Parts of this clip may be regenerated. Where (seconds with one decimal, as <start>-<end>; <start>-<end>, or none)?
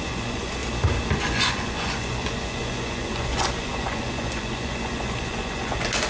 0.0-0.6; 1.2-6.1